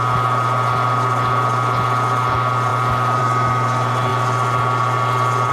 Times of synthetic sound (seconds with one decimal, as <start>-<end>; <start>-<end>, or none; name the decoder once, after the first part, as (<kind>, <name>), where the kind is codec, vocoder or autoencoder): none

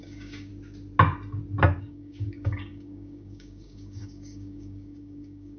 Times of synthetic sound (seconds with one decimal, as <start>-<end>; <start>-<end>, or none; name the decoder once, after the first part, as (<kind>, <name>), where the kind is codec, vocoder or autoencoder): 0.0-0.5 (codec, DAC); 1.8-5.6

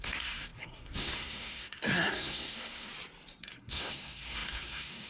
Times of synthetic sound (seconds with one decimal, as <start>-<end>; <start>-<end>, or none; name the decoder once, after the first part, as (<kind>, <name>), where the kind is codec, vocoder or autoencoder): 0.0-2.9 (codec, SNAC); 3.4-5.1

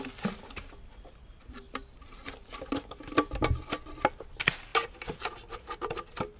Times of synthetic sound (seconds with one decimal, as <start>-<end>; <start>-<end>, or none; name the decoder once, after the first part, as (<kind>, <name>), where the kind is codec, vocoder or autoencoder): none